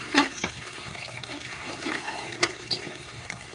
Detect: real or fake fake